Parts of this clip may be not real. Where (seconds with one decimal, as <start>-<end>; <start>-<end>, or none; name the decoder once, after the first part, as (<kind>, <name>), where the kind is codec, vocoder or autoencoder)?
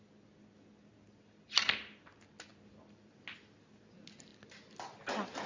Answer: none